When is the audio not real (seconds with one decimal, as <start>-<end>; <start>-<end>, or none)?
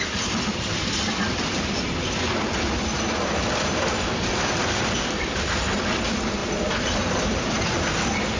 0.0-8.4